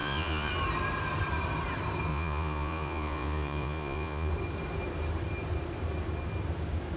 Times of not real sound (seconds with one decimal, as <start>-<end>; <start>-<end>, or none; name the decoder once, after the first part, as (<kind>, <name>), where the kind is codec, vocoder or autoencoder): 0.0-0.5 (vocoder, Vocos); 2.1-4.3